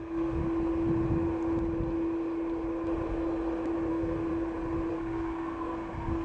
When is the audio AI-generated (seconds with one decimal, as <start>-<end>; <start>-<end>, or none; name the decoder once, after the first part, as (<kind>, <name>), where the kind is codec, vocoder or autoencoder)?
0.0-0.4 (codec, SNAC); 3.9-4.3; 4.9-6.2